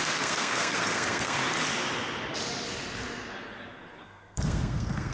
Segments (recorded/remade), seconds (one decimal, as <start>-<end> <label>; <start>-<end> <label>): 0.0-1.4 remade; 1.4-4.0 recorded; 4.0-5.1 remade